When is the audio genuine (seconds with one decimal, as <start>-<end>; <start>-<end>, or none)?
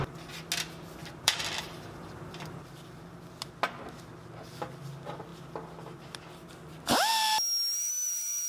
0.0-1.0; 3.0-8.5